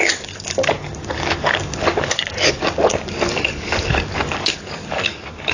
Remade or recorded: remade